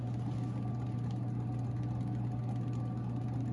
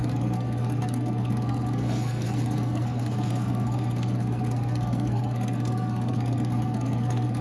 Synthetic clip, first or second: second